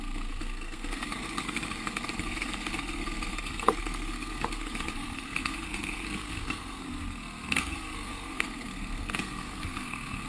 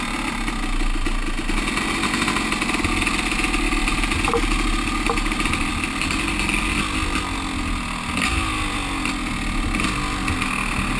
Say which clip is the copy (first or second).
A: first